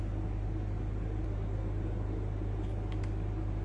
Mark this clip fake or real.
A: real